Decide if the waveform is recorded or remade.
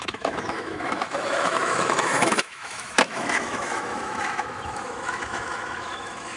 remade